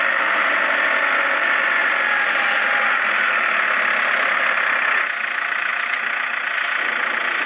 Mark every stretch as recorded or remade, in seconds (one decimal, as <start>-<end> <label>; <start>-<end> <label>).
0.0-7.5 recorded